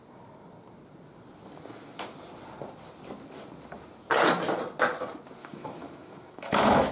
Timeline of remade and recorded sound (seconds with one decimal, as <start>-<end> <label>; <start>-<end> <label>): 0.0-5.4 recorded; 5.4-6.9 remade